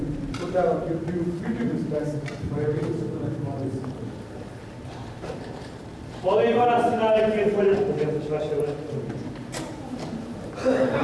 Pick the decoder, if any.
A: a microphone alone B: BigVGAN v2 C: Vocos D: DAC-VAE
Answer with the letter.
B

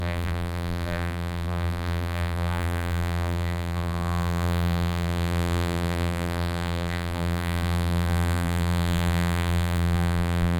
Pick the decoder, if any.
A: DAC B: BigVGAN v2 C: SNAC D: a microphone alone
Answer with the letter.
B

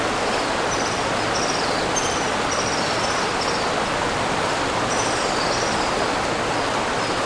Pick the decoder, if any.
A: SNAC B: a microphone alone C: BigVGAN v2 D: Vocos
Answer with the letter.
B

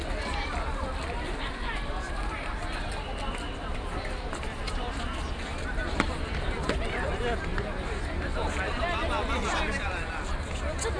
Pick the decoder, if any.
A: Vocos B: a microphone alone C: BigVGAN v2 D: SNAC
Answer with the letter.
B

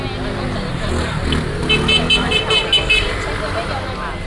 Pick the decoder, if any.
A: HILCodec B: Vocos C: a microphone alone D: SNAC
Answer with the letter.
C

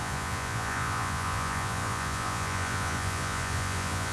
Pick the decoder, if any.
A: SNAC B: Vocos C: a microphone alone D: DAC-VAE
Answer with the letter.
B